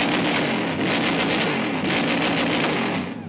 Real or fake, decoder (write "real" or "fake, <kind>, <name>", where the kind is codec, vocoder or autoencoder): real